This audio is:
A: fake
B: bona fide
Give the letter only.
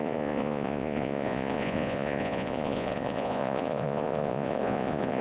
A